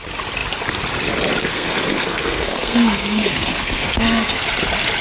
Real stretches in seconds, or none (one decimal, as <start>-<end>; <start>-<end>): 0.0-1.4; 4.4-5.0